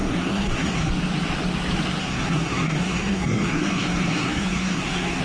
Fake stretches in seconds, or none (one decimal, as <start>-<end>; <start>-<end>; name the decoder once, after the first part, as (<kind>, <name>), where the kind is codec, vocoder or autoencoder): 0.0-0.9 (codec, SNAC); 2.0-5.2